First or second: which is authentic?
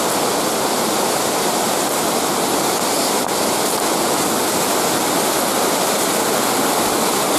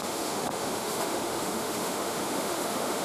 first